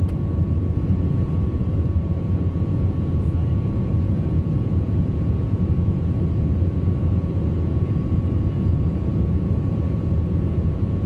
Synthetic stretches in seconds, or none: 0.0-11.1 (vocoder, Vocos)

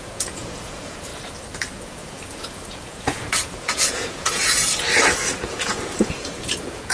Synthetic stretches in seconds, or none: 0.0-1.1 (vocoder, Vocos); 1.8-4.6; 5.4-6.9